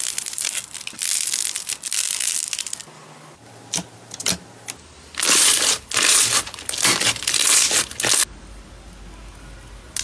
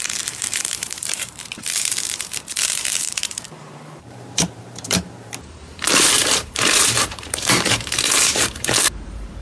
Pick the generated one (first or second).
second